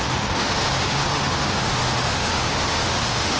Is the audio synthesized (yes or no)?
yes